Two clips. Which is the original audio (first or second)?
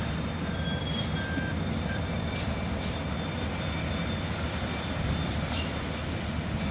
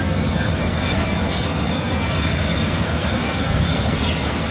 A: first